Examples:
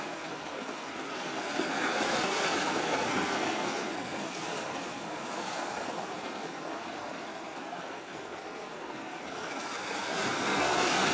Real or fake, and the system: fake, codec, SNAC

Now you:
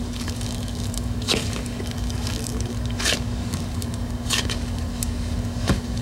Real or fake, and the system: fake, codec, DAC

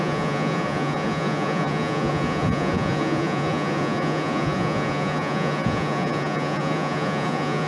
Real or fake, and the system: fake, vocoder, Vocos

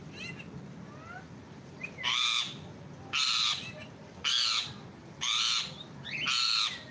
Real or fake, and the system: real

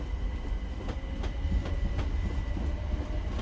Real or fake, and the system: real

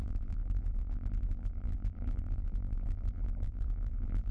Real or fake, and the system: fake, vocoder, BigVGAN v2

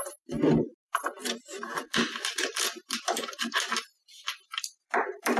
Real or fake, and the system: fake, vocoder, BigVGAN v2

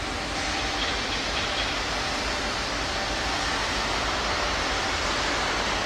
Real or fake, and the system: real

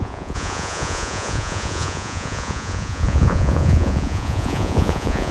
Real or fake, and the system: fake, vocoder, Vocos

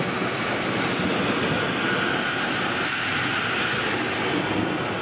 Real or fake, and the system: real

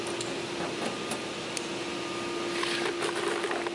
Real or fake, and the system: real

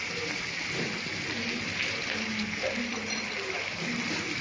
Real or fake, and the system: real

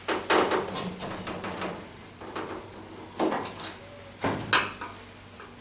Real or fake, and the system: real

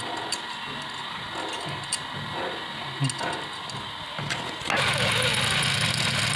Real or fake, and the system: real